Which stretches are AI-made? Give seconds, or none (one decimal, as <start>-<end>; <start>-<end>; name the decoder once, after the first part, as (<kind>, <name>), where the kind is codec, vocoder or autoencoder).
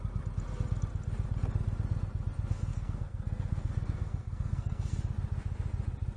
2.7-5.0 (codec, SNAC)